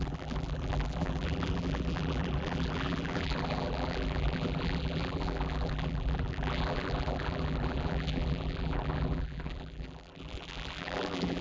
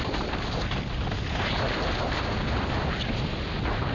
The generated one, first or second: first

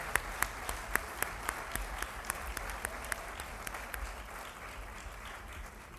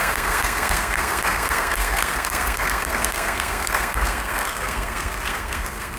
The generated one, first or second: second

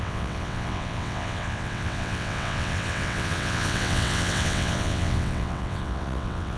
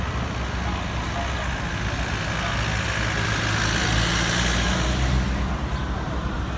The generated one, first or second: first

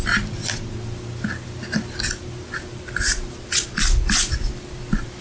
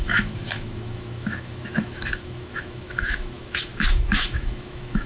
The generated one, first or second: second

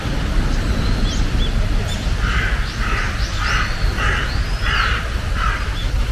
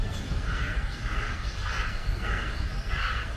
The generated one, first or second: second